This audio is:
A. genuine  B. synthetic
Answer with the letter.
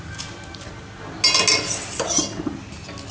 A